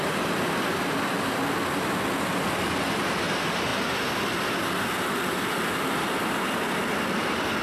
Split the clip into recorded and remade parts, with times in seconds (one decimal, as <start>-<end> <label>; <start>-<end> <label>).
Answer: 0.0-7.6 recorded